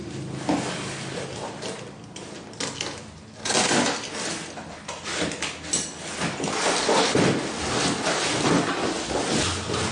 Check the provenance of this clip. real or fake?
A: real